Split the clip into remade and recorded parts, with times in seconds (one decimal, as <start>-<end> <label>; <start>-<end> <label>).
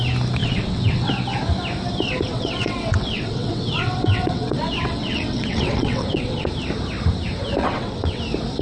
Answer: 0.0-0.4 recorded; 0.4-1.1 remade; 1.1-2.3 recorded; 2.3-6.5 remade; 6.5-7.6 recorded; 7.6-8.2 remade; 8.2-8.6 recorded